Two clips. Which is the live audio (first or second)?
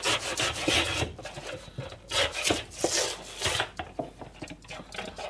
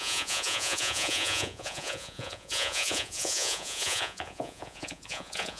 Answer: first